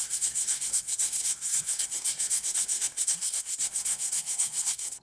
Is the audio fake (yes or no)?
yes